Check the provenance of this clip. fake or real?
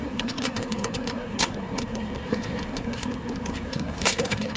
fake